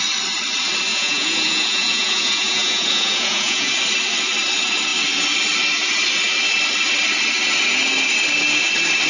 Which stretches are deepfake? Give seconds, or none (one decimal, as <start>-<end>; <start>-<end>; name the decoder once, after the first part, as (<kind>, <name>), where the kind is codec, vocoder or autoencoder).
0.9-3.7 (vocoder, Vocos)